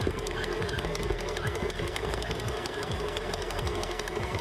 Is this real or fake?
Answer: fake